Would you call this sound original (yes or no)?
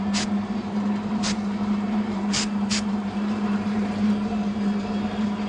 no